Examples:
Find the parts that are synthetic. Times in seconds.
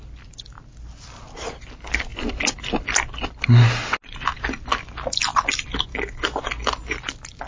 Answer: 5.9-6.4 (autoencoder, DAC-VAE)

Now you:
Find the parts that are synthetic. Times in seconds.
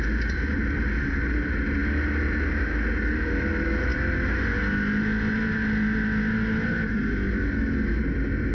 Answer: none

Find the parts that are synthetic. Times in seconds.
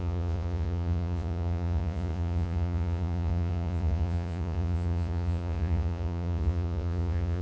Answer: 0.0-7.4 (vocoder, Vocos)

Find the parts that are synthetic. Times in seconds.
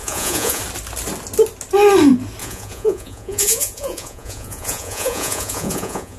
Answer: 0.0-0.6 (vocoder, Vocos); 2.4-6.2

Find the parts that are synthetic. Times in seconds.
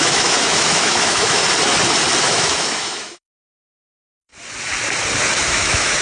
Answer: 0.0-1.4 (autoencoder, DAC-VAE); 2.2-4.3; 5.4-6.0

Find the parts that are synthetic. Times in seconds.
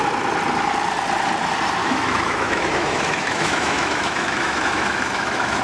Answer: 1.8-5.6 (autoencoder, DAC-VAE)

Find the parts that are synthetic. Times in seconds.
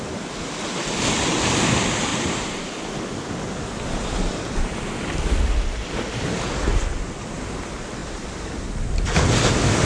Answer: 2.1-2.6 (vocoder, BigVGAN v2); 8.0-8.5